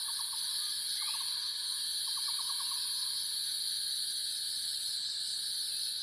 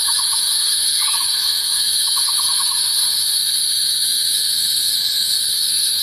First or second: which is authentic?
first